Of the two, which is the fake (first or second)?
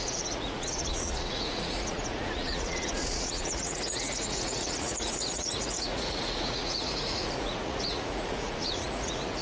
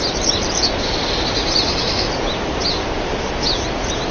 first